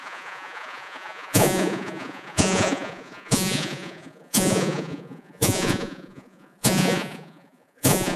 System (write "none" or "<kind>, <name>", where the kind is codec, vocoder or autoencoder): vocoder, Vocos